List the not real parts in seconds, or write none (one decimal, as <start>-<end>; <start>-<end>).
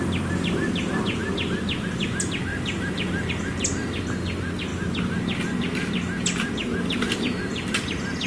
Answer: 2.5-3.3